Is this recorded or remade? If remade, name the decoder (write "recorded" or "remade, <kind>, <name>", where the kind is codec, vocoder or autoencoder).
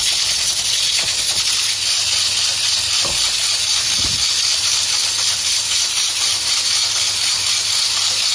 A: recorded